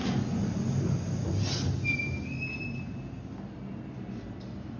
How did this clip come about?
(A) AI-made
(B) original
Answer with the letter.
B